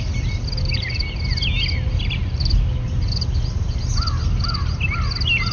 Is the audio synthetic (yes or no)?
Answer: no